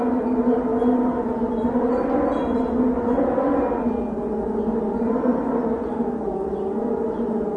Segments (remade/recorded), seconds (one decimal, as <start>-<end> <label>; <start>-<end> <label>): 0.0-7.6 recorded